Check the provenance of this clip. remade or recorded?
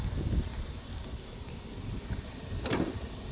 recorded